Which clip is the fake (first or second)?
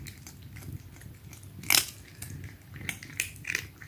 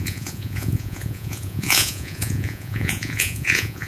second